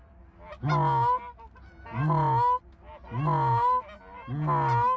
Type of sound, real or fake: real